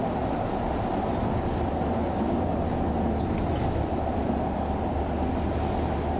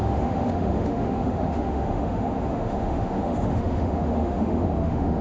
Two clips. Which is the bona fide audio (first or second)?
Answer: first